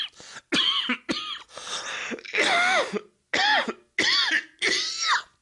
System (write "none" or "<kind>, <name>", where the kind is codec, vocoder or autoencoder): none